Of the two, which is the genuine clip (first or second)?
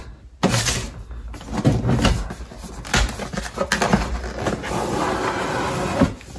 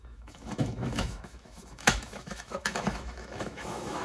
first